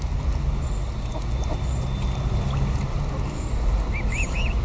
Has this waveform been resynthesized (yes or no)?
no